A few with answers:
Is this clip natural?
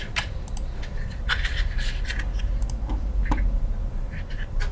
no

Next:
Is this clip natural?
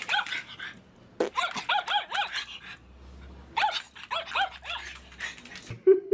yes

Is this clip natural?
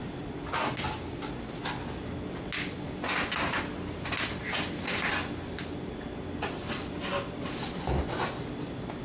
yes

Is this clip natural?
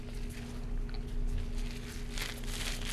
yes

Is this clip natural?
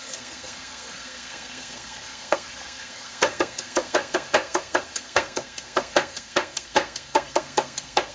no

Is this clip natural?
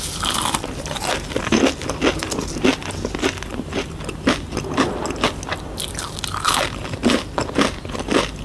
yes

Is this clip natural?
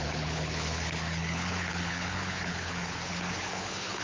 no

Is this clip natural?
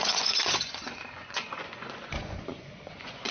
no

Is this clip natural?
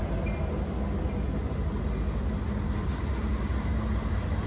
yes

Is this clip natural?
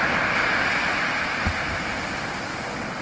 yes